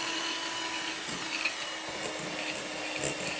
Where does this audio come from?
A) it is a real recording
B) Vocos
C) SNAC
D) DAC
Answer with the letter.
A